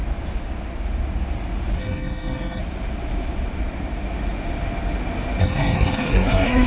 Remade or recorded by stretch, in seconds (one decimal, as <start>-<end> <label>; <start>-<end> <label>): 0.0-1.8 recorded; 1.8-2.6 remade; 2.6-5.4 recorded; 5.4-6.7 remade